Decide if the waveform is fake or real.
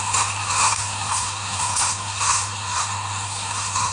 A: fake